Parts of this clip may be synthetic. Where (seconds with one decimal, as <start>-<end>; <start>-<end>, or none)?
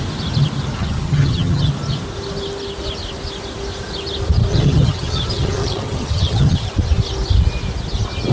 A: 0.8-1.7; 4.5-6.7